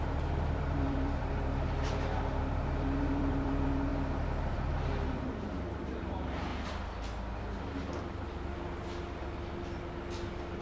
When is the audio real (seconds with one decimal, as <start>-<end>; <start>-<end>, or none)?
6.5-10.6